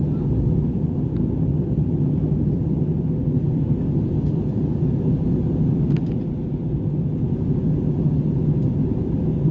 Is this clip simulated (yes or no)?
no